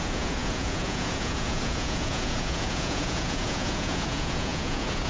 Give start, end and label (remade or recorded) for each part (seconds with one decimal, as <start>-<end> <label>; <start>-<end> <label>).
0.0-5.1 remade